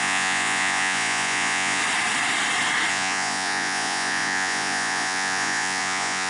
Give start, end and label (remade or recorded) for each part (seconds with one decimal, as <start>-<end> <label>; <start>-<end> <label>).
0.0-1.8 remade; 1.8-2.9 recorded; 2.9-6.3 remade